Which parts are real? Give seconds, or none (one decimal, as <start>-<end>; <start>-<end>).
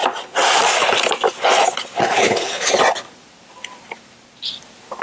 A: 0.0-2.0; 2.7-5.0